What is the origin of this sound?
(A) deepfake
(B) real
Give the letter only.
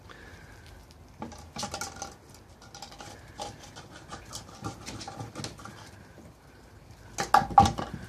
B